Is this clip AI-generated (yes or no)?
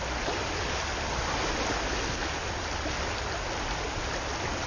no